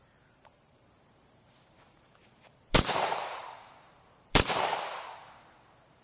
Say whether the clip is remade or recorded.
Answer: remade